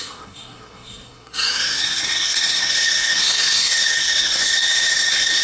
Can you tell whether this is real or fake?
fake